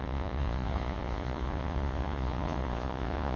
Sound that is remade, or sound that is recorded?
remade